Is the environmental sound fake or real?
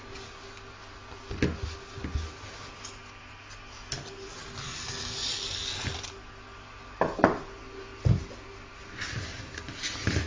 real